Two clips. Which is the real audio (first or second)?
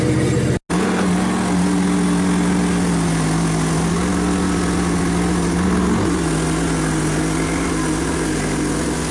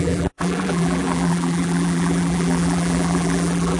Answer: first